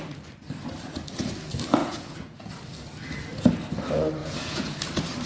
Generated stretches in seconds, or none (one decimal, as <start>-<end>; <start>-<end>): 1.8-2.5; 4.2-4.8